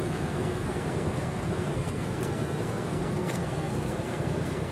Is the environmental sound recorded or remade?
remade